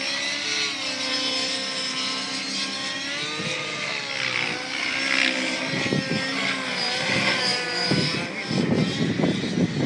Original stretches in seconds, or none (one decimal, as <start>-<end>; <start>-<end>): 0.0-9.9